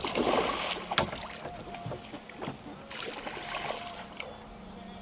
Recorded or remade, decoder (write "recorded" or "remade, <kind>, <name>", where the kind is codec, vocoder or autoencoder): recorded